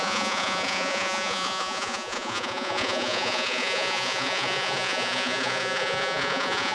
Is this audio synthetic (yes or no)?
yes